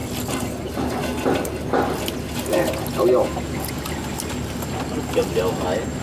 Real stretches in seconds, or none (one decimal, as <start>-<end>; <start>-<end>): 0.0-6.0